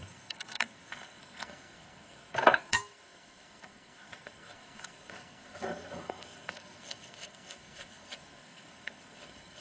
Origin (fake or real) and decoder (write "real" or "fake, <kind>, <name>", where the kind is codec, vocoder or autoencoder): fake, codec, SNAC